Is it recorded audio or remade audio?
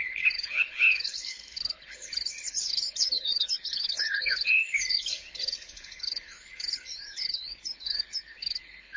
remade